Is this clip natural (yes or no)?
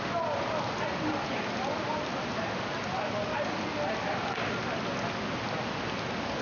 yes